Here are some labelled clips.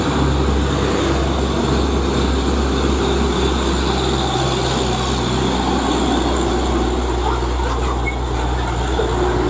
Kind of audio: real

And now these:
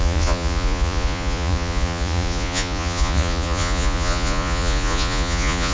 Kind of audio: fake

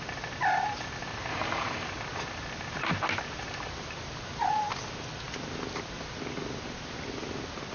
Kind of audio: real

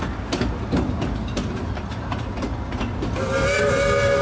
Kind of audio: real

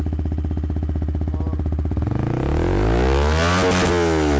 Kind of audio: real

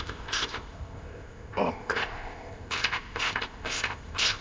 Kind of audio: fake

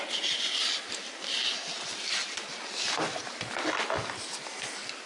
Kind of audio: real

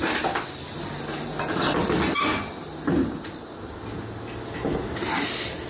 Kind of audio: real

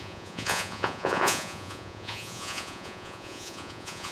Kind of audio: fake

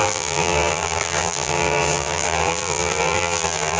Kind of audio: fake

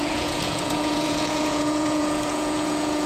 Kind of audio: fake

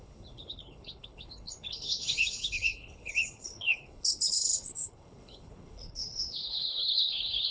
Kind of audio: fake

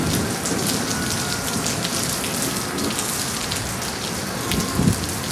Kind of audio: real